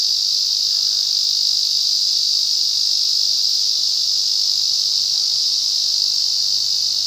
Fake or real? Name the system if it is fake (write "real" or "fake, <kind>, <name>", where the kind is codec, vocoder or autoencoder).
real